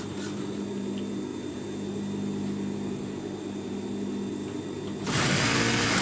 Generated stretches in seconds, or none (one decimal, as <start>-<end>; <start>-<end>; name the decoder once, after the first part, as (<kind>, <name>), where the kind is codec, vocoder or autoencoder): none